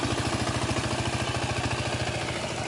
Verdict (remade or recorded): recorded